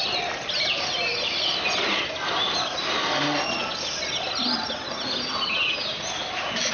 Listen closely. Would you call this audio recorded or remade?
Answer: recorded